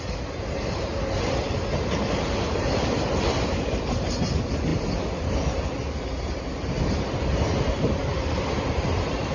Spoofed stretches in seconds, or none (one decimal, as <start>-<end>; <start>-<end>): none